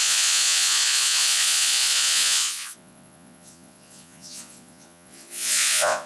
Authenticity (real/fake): fake